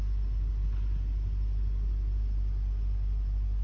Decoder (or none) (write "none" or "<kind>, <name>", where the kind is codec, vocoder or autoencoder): none